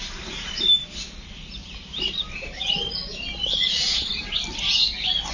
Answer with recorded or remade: recorded